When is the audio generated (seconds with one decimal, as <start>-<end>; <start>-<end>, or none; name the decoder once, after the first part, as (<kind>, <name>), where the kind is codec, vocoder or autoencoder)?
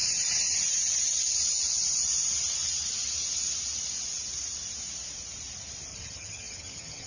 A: 5.9-7.1 (vocoder, HiFi-GAN)